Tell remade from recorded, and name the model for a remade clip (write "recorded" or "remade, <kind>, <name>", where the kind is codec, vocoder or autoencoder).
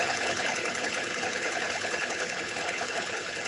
remade, codec, HILCodec